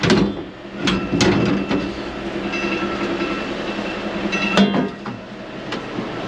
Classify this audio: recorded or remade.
recorded